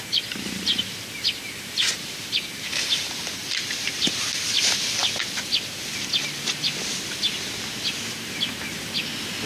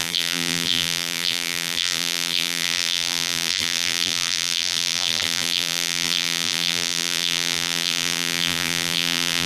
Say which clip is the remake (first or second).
second